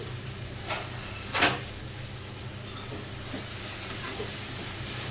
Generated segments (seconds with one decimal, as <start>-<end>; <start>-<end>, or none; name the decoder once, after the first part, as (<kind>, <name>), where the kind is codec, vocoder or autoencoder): 0.0-1.3 (vocoder, BigVGAN v2); 3.5-5.1